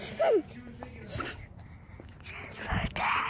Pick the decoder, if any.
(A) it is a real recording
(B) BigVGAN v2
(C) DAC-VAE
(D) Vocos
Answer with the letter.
A